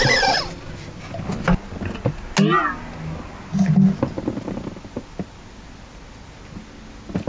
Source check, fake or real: real